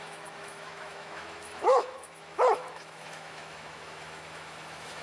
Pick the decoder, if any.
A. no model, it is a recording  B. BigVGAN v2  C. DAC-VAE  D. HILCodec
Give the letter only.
C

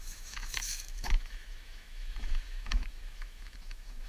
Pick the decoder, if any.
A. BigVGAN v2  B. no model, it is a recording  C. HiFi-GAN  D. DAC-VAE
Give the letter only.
D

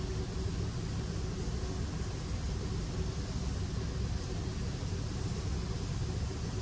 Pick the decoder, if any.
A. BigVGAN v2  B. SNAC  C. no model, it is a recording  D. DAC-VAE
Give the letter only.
C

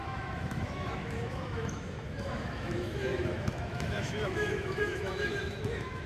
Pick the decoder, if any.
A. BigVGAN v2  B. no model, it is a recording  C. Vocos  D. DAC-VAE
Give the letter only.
D